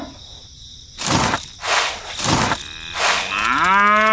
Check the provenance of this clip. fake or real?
real